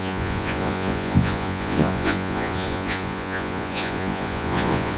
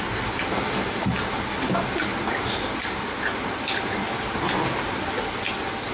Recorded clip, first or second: second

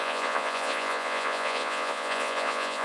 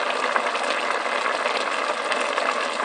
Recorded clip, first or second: second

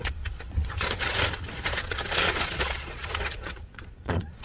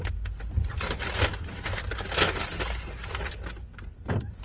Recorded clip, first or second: second